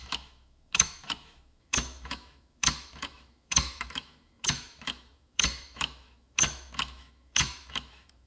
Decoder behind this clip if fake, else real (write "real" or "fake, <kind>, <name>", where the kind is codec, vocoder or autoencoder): fake, autoencoder, DAC-VAE